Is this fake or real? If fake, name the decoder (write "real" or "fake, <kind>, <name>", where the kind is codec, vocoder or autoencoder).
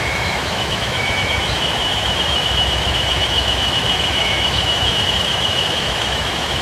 fake, autoencoder, DAC-VAE